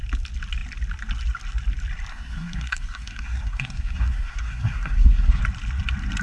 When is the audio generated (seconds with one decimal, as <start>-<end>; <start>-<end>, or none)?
2.1-5.4